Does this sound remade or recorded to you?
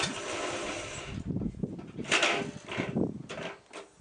recorded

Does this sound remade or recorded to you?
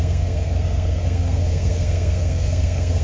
remade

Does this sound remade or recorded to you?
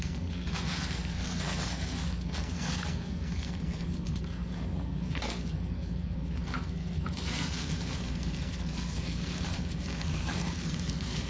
remade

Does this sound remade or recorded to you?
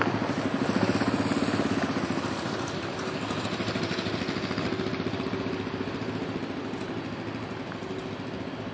recorded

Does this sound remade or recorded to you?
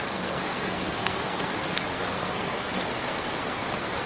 remade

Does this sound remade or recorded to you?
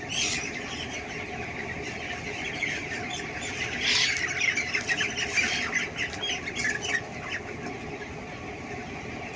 recorded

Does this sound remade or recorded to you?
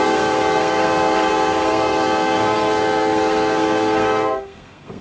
remade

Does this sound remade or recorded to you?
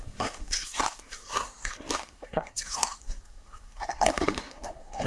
remade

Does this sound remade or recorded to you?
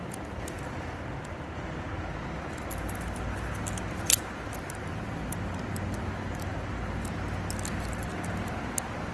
recorded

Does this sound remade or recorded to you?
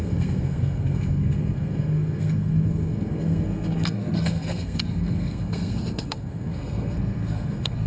remade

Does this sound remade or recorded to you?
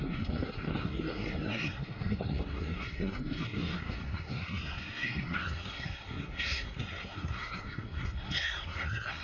remade